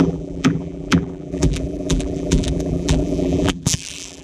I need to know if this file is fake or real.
fake